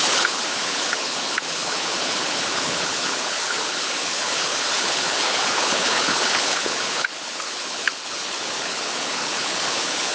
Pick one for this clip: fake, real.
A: fake